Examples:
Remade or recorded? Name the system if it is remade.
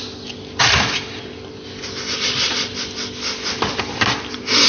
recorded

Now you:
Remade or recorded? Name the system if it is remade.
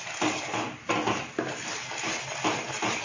recorded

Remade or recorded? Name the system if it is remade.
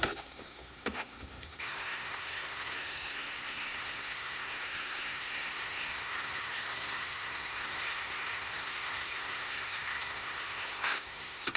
remade, codec, SNAC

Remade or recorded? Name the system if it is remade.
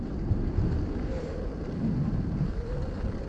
recorded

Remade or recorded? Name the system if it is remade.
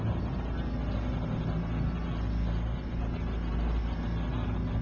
recorded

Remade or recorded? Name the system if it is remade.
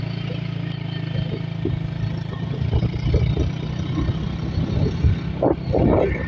recorded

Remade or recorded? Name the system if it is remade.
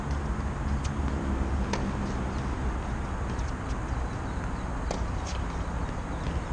recorded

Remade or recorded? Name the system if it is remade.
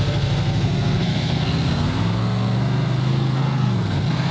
remade, codec, SNAC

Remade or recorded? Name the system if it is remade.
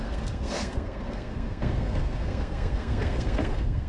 remade, codec, SNAC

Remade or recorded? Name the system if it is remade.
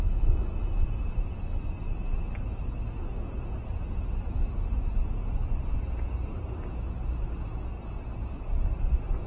recorded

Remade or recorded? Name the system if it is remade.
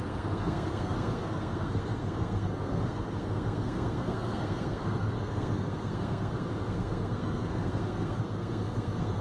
remade, codec, SNAC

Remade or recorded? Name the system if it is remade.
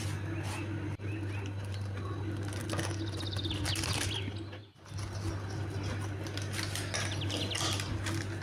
recorded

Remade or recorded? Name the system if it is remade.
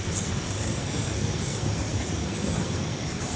remade, codec, SNAC